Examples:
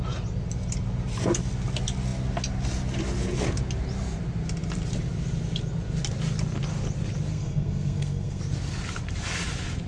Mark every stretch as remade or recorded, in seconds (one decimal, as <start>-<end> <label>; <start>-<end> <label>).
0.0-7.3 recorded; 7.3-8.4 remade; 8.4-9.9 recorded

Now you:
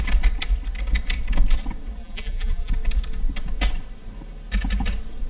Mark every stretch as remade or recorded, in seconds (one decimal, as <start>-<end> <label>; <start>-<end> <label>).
0.0-2.0 recorded; 2.0-2.7 remade; 2.7-5.3 recorded

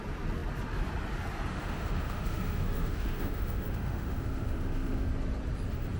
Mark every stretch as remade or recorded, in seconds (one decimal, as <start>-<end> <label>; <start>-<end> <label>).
0.0-1.5 recorded; 1.5-5.1 remade; 5.1-6.0 recorded

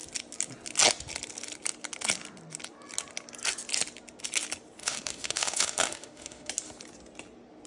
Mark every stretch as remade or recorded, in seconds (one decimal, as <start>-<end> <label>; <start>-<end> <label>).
0.0-4.8 recorded; 4.8-6.5 remade; 6.5-7.7 recorded

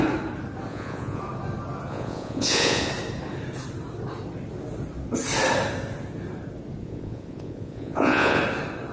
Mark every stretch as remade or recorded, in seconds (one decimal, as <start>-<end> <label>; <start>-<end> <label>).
0.0-0.7 recorded; 0.7-1.2 remade; 1.2-1.9 recorded; 1.9-2.9 remade; 2.9-6.8 recorded; 6.8-8.4 remade; 8.4-8.9 recorded